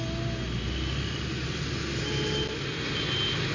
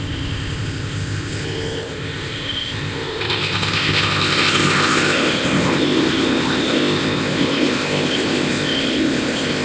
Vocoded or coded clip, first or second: second